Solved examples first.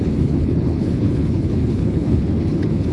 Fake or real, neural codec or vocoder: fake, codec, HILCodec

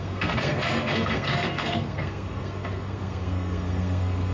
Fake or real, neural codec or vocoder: fake, codec, SNAC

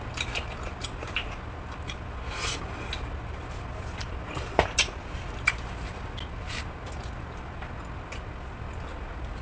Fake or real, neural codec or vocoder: real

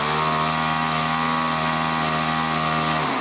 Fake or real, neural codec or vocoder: real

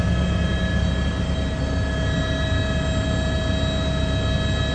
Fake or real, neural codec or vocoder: real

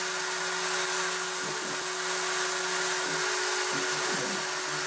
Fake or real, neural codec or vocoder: real